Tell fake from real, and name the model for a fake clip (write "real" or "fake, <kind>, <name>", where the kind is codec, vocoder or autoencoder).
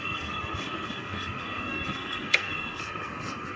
fake, codec, SNAC